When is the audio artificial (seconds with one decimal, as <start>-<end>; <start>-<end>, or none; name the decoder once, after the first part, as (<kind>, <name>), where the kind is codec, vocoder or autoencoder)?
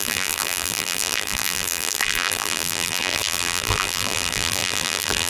0.0-5.3 (vocoder, BigVGAN v2)